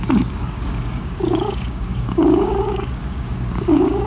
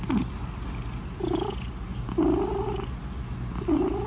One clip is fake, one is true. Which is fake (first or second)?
first